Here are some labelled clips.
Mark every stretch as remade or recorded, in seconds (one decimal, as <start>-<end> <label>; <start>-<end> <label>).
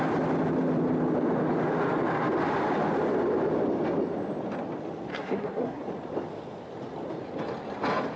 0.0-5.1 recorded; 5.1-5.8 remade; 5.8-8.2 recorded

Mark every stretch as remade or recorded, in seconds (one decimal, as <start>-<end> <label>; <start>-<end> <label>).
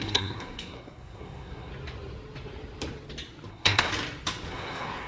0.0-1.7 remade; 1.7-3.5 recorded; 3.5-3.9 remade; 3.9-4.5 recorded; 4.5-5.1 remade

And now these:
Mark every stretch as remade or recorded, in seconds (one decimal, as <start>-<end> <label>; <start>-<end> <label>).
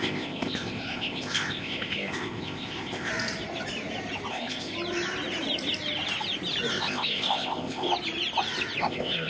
0.0-3.1 remade; 3.1-4.3 recorded; 4.3-4.7 remade; 4.7-6.7 recorded; 6.7-7.9 remade; 7.9-8.8 recorded; 8.8-9.3 remade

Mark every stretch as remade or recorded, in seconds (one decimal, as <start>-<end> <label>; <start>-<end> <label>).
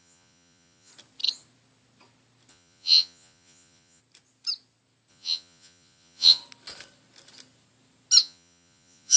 0.0-0.9 remade; 0.9-2.5 recorded; 2.5-4.0 remade; 4.0-5.1 recorded; 5.1-6.4 remade; 6.4-8.2 recorded; 8.2-9.2 remade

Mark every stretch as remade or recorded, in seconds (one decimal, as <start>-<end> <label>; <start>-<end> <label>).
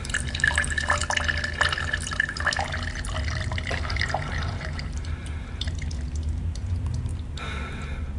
0.0-1.0 remade; 1.0-3.4 recorded; 3.4-7.1 remade; 7.1-8.2 recorded